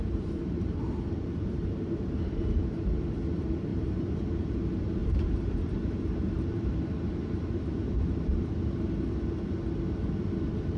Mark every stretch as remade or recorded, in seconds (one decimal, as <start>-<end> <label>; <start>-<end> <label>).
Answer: 0.0-2.8 remade; 2.8-3.7 recorded; 3.7-4.6 remade; 4.6-5.0 recorded; 5.0-8.6 remade; 8.6-10.8 recorded